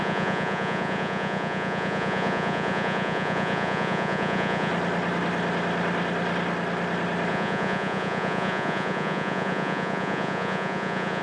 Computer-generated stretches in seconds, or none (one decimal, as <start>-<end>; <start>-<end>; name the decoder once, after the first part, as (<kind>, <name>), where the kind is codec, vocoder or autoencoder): 0.0-4.7 (vocoder, Vocos); 7.3-11.2